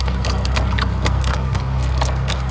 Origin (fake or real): fake